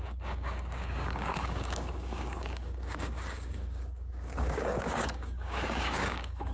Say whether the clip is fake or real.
fake